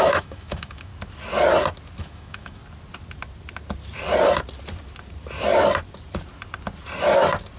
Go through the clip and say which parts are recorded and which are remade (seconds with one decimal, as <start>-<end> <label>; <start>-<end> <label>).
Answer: 0.0-0.9 remade; 0.9-2.0 recorded; 2.0-2.6 remade; 2.6-7.6 recorded